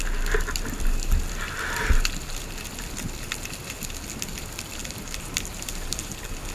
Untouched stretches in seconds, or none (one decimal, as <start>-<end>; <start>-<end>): 0.0-4.8; 6.1-6.5